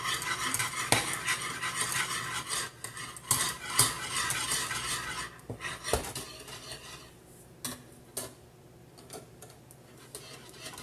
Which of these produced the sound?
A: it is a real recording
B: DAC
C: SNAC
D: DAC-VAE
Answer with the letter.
A